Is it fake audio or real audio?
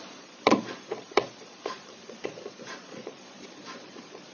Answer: fake